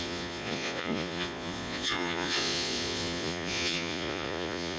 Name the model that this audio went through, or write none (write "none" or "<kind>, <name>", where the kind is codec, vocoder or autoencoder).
vocoder, Vocos